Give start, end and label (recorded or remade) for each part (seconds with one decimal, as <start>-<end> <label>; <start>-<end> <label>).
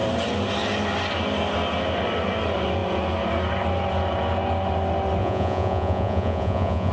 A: 0.0-5.2 recorded; 5.2-6.9 remade